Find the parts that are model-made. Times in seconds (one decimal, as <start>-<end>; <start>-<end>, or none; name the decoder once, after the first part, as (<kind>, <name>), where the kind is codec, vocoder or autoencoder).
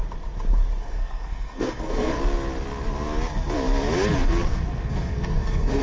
0.8-2.2 (codec, SNAC); 4.5-5.8